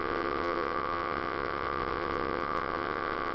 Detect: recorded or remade remade